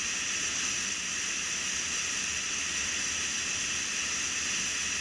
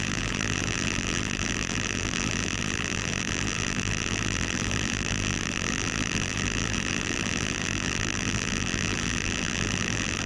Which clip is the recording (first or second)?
first